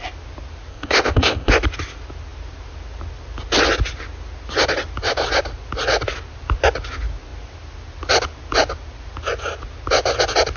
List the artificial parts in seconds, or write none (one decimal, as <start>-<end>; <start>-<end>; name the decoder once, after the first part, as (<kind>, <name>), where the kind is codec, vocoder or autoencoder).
0.7-1.5 (codec, ZipCodec)